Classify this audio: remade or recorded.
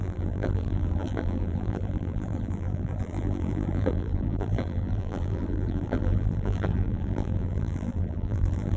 remade